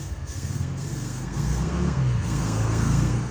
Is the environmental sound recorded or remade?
remade